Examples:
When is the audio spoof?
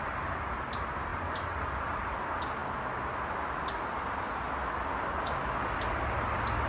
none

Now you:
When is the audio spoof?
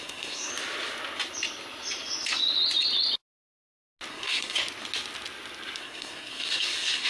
0.0-0.5 (codec, SNAC); 4.1-4.6; 5.8-7.1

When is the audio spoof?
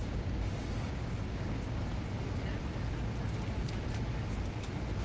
0.0-1.8 (codec, DAC)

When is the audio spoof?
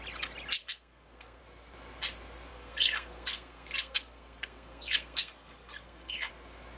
0.6-1.4 (codec, SNAC); 2.5-6.3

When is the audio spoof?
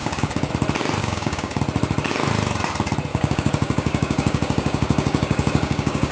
0.0-0.5 (codec, DAC); 1.0-1.6; 3.1-6.1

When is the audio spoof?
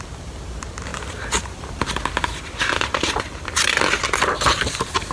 0.9-4.0 (vocoder, BigVGAN v2)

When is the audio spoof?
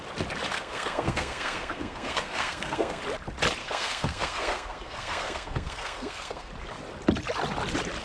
0.5-3.0 (codec, SNAC); 3.6-6.5